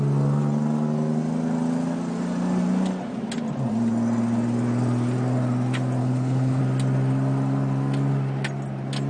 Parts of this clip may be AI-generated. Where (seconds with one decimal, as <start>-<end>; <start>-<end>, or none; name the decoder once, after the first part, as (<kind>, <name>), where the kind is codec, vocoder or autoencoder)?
6.0-6.6 (codec, HILCodec)